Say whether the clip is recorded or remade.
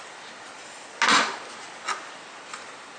recorded